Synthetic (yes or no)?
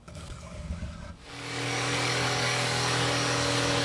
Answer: yes